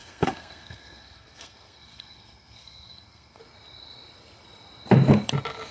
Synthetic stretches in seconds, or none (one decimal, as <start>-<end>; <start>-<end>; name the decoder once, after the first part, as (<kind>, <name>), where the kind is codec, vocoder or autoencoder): 0.0-3.4 (codec, SNAC)